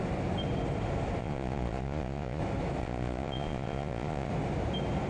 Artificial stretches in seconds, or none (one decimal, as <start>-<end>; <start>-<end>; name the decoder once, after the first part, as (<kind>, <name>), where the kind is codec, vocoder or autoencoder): 1.2-2.4 (vocoder, Vocos); 2.8-4.3